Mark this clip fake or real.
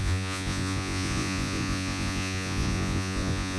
fake